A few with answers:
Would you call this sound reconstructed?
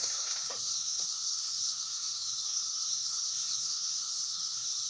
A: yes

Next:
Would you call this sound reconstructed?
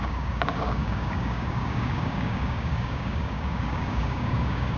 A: yes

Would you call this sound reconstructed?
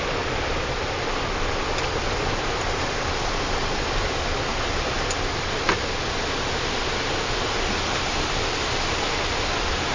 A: no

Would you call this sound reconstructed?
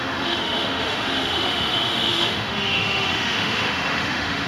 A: yes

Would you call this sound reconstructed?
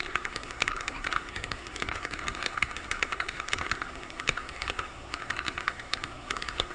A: yes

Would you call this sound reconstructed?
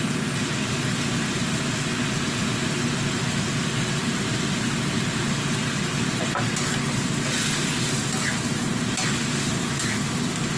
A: no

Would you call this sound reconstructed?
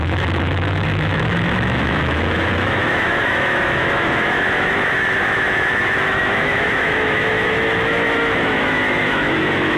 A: yes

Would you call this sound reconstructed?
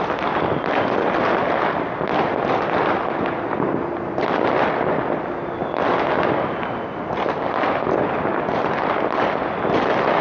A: no